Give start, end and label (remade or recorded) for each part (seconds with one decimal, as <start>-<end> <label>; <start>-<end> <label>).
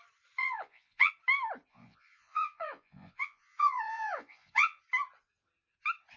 0.0-0.4 recorded; 0.4-1.1 remade; 1.1-1.7 recorded; 1.7-4.8 remade; 4.8-6.2 recorded